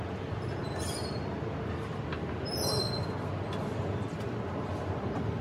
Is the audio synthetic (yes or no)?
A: no